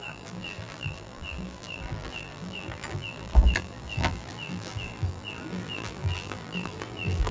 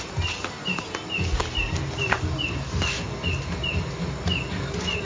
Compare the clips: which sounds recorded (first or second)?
second